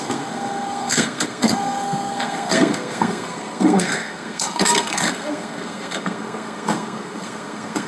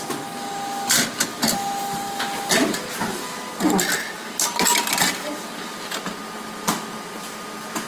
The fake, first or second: first